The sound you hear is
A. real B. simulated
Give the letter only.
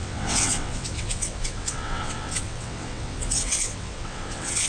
B